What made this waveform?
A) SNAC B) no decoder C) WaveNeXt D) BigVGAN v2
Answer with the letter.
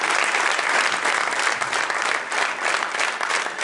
B